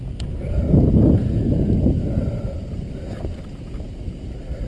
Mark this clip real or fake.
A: real